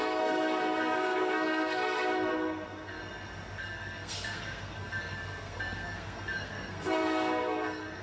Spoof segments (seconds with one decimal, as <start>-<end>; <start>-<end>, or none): 0.0-3.0; 3.6-8.0